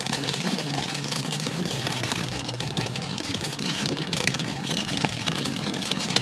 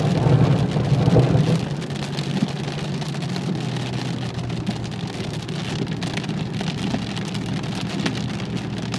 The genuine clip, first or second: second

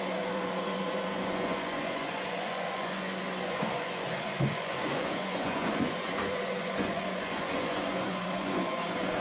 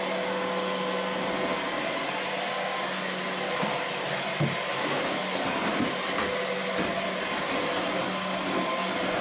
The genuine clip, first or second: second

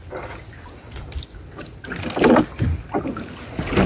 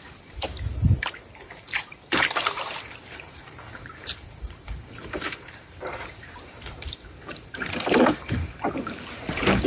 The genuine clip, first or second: first